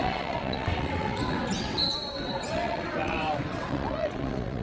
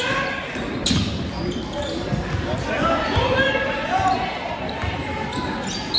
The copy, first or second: first